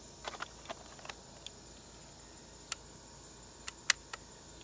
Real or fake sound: real